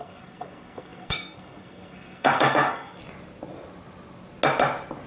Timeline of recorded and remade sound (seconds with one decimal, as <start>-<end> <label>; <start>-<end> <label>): 0.0-3.0 remade; 3.0-5.1 recorded